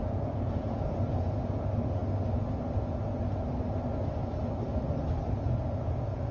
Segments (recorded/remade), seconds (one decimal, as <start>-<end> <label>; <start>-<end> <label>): 0.0-2.0 remade; 2.0-5.8 recorded; 5.8-6.3 remade